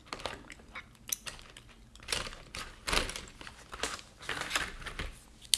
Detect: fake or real real